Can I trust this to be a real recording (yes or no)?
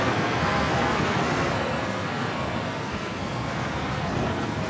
no